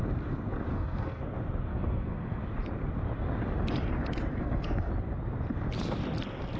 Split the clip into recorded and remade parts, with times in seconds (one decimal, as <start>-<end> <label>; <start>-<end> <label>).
0.0-0.7 recorded; 0.7-1.2 remade; 1.2-1.7 recorded; 1.7-2.4 remade; 2.4-4.3 recorded; 4.3-4.9 remade; 4.9-6.6 recorded